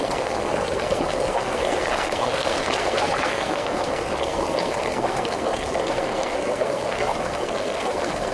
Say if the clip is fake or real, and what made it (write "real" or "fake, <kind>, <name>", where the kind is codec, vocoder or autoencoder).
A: fake, codec, SNAC